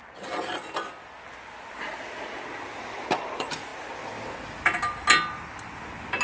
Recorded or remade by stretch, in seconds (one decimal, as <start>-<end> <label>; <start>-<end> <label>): 0.0-6.2 recorded